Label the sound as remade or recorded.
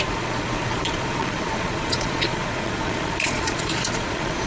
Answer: remade